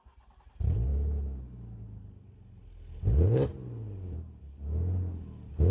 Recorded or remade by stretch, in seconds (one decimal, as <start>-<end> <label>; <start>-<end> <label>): 0.0-5.7 recorded